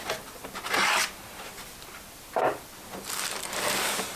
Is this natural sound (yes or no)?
yes